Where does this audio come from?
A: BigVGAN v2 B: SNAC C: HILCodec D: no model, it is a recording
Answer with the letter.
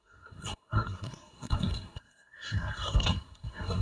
B